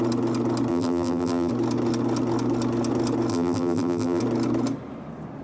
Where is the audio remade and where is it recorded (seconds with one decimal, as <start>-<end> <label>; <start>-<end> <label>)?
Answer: 0.0-0.7 recorded; 0.7-1.5 remade; 1.5-3.3 recorded; 3.3-4.2 remade; 4.2-5.4 recorded